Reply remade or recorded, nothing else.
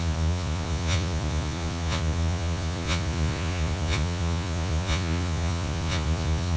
remade